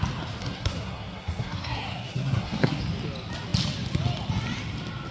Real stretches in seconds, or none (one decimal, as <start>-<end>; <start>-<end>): 0.0-0.4; 2.8-5.1